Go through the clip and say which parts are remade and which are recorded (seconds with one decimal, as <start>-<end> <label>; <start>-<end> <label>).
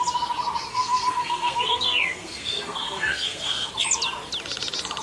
0.0-0.7 recorded; 0.7-3.7 remade; 3.7-5.0 recorded